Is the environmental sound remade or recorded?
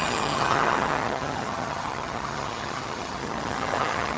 remade